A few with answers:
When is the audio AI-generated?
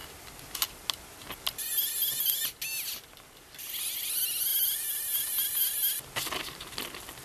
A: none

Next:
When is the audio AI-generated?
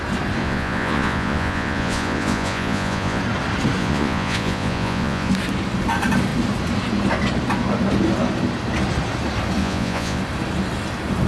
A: 0.4-3.2 (vocoder, Vocos); 3.8-5.3; 9.6-10.2